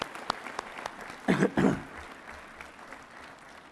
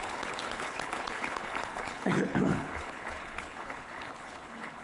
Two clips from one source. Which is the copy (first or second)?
second